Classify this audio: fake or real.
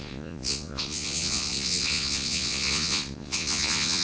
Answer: fake